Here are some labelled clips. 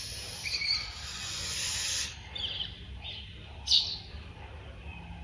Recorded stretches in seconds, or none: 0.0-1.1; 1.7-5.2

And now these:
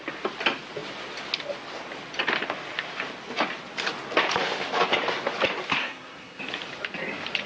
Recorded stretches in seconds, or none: 0.0-5.8; 6.4-7.5

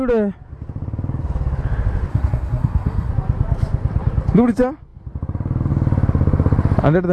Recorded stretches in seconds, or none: 0.0-2.1; 3.1-7.1

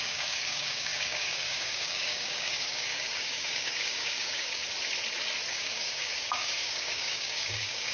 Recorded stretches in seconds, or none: 4.6-5.5

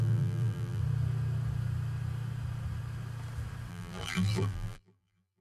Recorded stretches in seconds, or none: 0.8-3.7

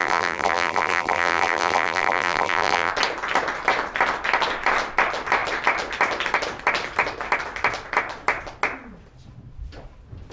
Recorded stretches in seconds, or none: 2.9-10.3

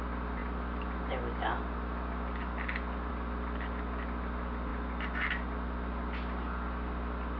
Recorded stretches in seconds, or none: 0.0-7.4